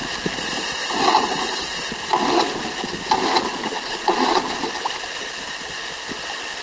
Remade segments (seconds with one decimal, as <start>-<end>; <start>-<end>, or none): 3.5-4.7